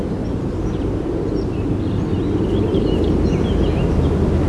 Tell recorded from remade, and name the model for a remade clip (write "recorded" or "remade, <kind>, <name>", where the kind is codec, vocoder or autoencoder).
recorded